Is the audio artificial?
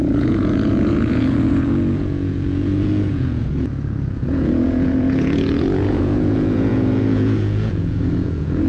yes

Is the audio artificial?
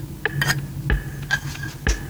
no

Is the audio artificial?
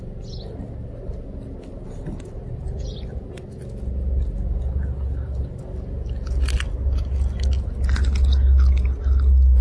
no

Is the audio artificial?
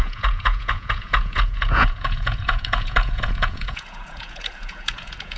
yes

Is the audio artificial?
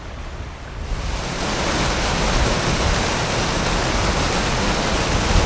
no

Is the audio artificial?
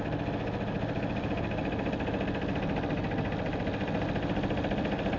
no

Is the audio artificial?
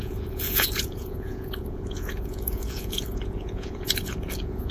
yes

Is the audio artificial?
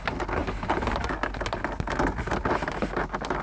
no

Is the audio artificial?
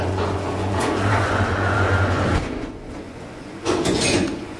yes